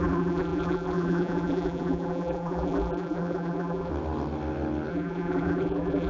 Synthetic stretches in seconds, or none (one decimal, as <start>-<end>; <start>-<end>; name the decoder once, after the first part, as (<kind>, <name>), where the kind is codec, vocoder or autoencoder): 0.0-3.9 (vocoder, BigVGAN v2); 4.9-6.1